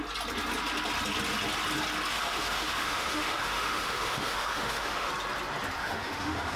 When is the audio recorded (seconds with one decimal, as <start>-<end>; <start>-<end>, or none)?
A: 0.0-2.1; 5.1-5.8